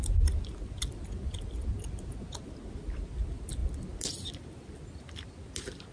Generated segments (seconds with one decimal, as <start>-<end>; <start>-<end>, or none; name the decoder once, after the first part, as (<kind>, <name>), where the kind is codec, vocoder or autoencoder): none